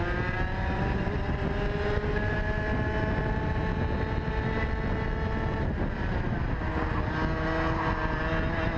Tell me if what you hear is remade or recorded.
recorded